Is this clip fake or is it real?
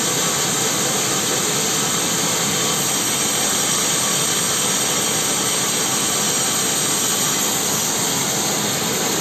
real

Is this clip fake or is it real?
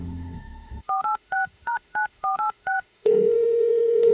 fake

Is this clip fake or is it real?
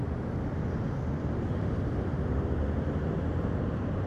real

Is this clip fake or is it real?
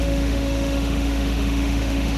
fake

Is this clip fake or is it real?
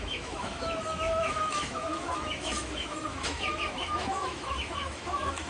fake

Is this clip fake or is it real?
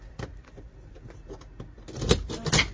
real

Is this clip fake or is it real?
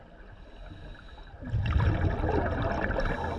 real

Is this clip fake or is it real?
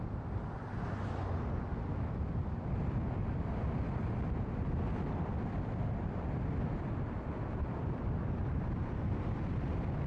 real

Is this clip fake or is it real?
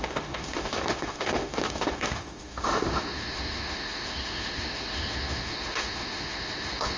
fake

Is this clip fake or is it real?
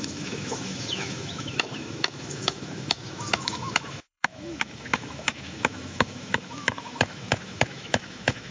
fake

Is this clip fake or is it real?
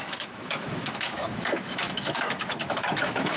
fake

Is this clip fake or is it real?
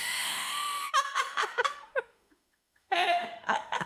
fake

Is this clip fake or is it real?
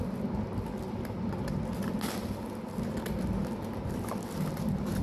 real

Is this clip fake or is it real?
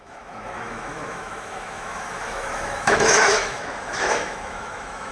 fake